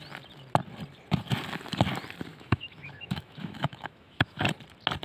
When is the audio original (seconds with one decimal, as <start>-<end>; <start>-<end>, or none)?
0.0-2.3; 4.4-5.0